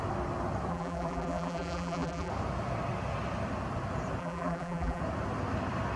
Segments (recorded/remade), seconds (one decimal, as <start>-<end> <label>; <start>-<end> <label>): 0.0-0.7 recorded; 0.7-2.3 remade; 2.3-4.2 recorded; 4.2-5.0 remade; 5.0-6.0 recorded